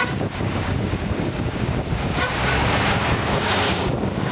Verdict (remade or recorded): remade